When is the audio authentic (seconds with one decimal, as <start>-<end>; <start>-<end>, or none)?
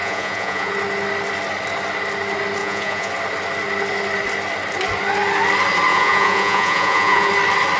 0.7-2.6; 3.1-5.9; 7.3-7.8